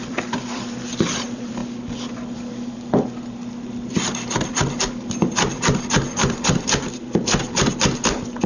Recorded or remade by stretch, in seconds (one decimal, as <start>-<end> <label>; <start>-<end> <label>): 0.0-1.6 remade; 1.6-3.9 recorded; 3.9-8.5 remade